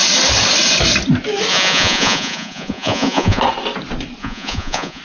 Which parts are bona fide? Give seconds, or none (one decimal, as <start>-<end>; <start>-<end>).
0.0-1.5; 3.4-4.2